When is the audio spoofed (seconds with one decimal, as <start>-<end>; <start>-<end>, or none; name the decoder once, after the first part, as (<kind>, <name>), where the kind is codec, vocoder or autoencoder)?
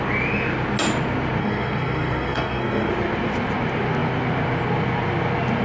1.4-2.9 (codec, SNAC)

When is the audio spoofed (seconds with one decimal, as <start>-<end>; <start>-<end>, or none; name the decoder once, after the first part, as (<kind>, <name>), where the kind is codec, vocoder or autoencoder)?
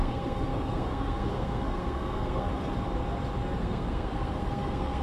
0.0-2.5 (codec, SNAC); 3.6-5.0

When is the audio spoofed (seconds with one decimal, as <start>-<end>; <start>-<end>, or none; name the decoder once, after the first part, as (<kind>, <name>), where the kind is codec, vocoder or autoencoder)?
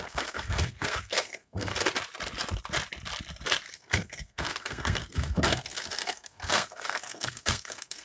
0.0-1.7 (codec, SNAC); 3.7-8.0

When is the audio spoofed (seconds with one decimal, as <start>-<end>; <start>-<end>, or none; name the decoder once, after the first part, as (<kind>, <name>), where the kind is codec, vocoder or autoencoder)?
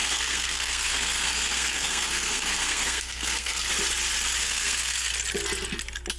0.0-3.7 (codec, SNAC); 4.4-5.1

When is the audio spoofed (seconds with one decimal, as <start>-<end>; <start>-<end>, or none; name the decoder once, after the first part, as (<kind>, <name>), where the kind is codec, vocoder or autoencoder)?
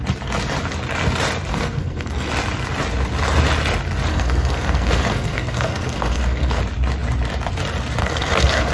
1.5-2.3 (codec, SNAC); 4.1-6.6; 8.0-8.7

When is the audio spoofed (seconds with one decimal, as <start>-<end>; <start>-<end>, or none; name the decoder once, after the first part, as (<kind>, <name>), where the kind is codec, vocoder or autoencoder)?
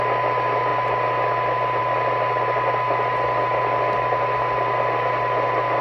none